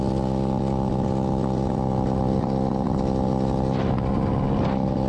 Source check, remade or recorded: recorded